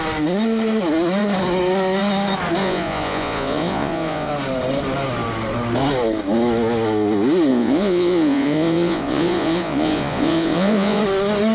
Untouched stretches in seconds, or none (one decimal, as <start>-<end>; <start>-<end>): 0.0-2.6; 4.3-7.5; 11.0-11.5